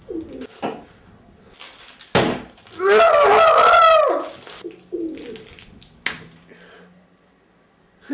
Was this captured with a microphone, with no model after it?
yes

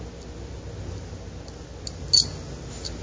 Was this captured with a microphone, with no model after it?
yes